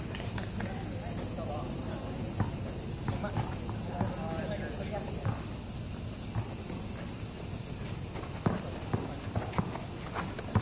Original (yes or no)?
yes